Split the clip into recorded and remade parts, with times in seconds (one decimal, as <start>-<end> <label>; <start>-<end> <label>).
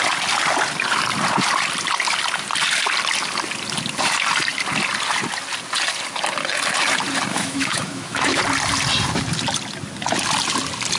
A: 0.0-7.3 recorded; 7.3-8.4 remade; 8.4-11.0 recorded